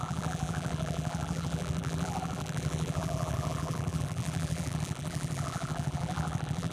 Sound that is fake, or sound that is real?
fake